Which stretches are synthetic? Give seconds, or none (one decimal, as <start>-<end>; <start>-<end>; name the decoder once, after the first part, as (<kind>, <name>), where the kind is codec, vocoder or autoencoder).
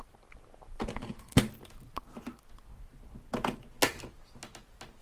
0.9-1.4 (codec, SNAC)